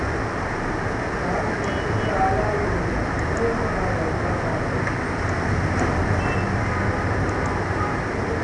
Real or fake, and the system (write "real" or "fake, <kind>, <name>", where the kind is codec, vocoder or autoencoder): real